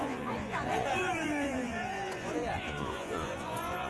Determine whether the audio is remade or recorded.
remade